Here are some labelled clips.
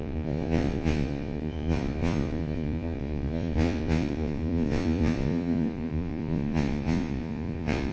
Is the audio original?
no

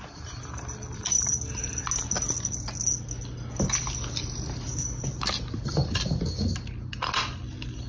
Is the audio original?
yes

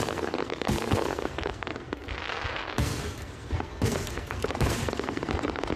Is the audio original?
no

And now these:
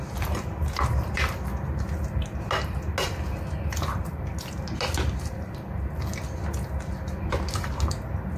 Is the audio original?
yes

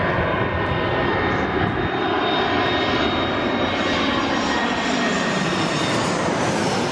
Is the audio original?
yes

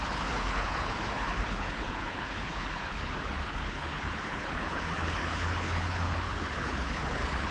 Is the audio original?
no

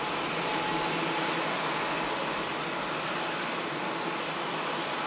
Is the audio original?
yes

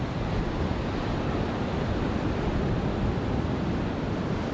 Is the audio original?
yes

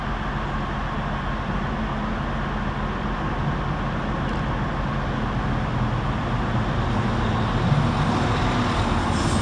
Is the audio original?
yes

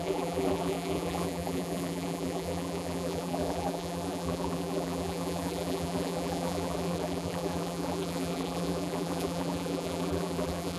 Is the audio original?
no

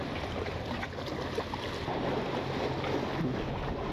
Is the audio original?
yes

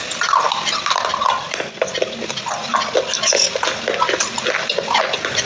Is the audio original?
yes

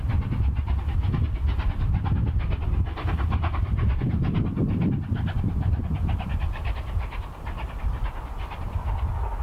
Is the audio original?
yes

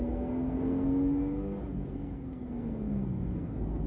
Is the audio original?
no